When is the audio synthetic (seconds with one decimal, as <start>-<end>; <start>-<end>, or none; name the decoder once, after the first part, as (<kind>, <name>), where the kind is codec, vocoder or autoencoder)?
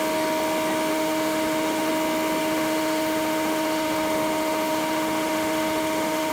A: 0.9-1.9 (autoencoder, DAC-VAE); 2.4-6.3